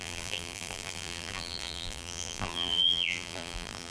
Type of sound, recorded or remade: remade